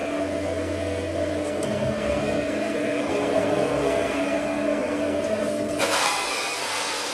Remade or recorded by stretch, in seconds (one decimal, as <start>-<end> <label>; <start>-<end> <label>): 0.0-7.1 remade